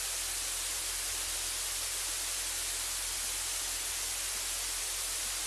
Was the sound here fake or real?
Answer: real